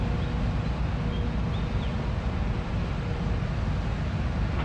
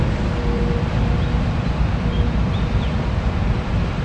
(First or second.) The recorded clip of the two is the first